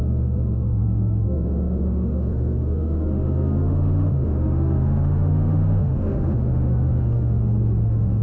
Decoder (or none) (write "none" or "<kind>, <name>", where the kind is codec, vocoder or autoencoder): autoencoder, DAC-VAE